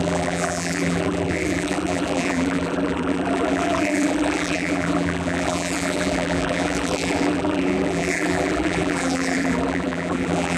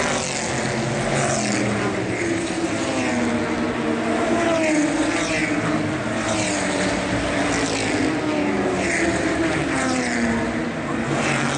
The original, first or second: second